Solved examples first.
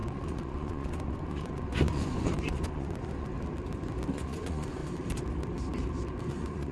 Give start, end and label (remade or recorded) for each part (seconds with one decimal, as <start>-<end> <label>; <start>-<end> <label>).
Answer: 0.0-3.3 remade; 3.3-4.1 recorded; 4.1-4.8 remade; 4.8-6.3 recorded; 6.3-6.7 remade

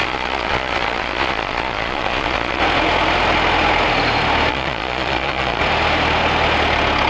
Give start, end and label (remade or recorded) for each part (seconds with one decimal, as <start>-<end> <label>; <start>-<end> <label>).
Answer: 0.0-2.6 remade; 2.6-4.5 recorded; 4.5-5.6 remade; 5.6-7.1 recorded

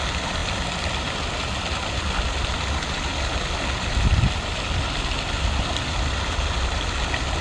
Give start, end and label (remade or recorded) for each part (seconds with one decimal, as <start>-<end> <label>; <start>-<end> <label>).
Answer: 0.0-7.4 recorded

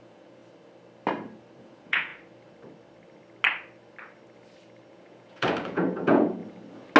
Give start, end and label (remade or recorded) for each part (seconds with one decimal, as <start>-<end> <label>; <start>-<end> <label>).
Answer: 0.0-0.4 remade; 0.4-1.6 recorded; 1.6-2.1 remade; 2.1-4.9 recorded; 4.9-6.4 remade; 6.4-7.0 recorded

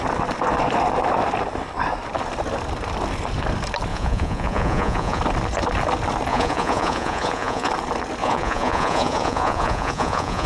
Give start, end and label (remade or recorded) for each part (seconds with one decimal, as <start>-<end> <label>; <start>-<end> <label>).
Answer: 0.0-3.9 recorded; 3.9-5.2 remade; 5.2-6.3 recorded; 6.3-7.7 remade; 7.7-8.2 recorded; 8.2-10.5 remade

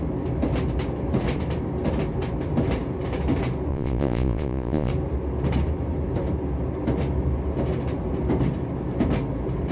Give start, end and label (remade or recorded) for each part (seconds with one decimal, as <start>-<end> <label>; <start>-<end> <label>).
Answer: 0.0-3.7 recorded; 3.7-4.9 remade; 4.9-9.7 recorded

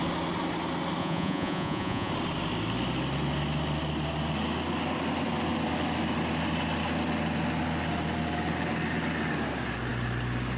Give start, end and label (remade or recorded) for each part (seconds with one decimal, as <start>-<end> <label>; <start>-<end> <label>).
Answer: 0.0-1.0 recorded; 1.0-2.1 remade; 2.1-10.6 recorded

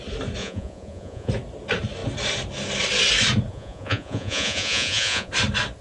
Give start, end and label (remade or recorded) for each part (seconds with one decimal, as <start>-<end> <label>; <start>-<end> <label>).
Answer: 0.0-0.4 recorded; 0.4-1.3 remade; 1.3-3.5 recorded; 3.5-5.3 remade; 5.3-5.8 recorded